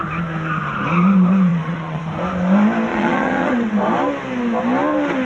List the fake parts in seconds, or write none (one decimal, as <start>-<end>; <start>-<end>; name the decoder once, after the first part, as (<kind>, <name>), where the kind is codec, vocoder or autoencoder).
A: 1.5-2.0 (vocoder, WaveNeXt); 2.9-3.7